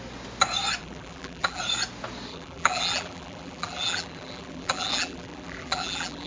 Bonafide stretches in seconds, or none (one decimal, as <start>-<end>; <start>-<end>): 0.0-0.8; 1.6-2.3